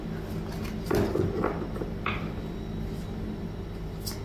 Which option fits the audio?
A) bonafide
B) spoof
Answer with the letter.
A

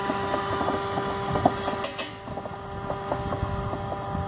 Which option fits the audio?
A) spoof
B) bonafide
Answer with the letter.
B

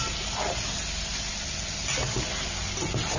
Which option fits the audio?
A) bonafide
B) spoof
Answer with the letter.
A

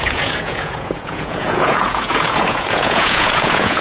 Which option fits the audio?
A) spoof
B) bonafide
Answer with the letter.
A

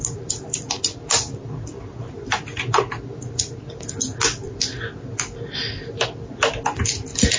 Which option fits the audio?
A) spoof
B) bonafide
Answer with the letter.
B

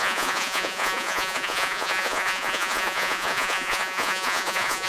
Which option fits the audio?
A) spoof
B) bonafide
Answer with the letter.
A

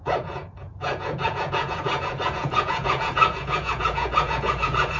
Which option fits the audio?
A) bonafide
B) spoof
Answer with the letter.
B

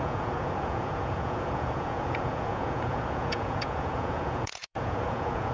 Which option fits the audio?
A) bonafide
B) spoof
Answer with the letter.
B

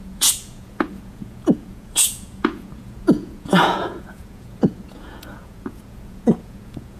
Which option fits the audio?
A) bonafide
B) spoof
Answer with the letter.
B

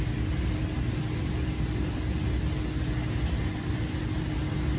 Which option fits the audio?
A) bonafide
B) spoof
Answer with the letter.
A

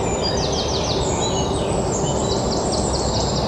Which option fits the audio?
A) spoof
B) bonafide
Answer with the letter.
B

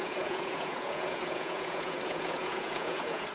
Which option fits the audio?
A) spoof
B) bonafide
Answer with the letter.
A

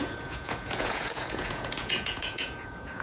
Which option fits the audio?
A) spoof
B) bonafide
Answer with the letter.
A